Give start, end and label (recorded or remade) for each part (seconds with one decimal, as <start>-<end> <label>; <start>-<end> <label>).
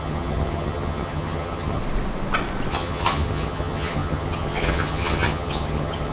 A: 0.0-1.8 remade; 1.8-2.7 recorded; 2.7-6.1 remade